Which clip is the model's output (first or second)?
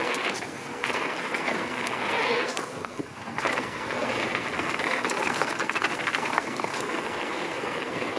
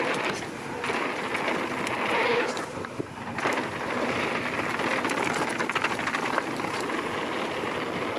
first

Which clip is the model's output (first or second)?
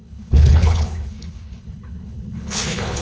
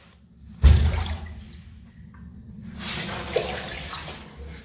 first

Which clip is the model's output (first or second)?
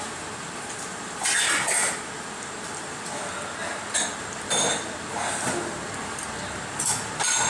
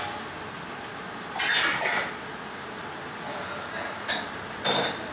first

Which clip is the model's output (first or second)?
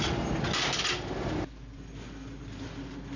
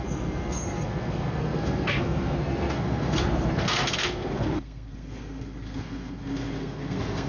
second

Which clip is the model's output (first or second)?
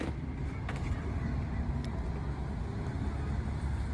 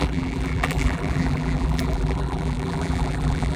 second